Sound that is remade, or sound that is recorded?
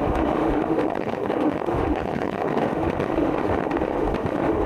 remade